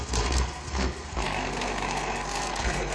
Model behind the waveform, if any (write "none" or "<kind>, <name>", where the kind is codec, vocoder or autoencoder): codec, SNAC